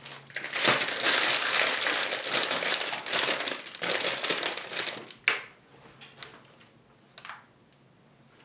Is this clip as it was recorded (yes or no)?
yes